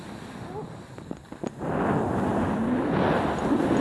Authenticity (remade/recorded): recorded